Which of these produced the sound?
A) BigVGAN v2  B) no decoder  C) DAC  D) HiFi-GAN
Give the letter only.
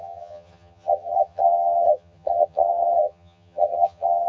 D